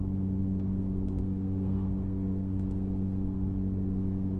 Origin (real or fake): fake